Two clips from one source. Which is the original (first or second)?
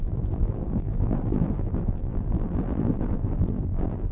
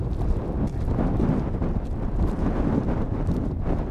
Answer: second